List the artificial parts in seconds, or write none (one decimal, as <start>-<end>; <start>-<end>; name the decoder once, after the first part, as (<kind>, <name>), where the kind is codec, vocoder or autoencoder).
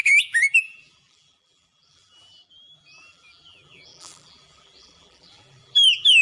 0.0-6.2 (vocoder, BigVGAN v2)